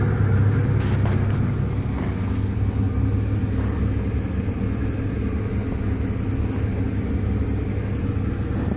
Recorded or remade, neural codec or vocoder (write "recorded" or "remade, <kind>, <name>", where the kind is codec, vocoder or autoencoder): recorded